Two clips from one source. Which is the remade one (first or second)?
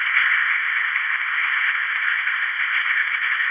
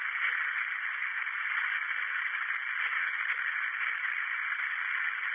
first